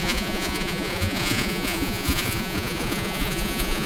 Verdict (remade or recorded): remade